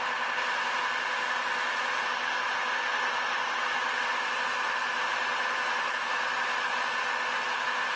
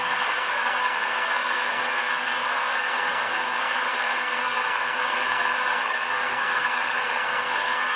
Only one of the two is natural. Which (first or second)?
first